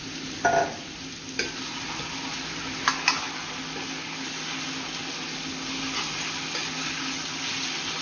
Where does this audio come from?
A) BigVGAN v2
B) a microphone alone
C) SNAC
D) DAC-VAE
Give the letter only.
B